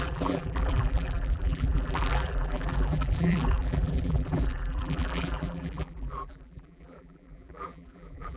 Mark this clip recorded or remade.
remade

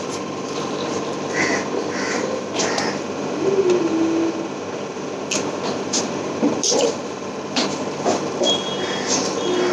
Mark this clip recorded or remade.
recorded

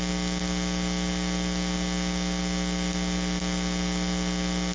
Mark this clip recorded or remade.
recorded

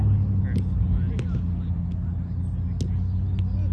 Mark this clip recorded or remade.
recorded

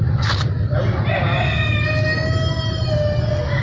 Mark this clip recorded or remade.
recorded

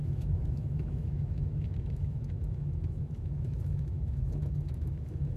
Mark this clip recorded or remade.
remade